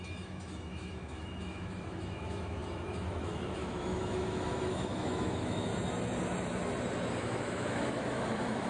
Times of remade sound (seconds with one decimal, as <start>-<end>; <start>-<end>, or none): 0.0-5.7; 7.2-8.7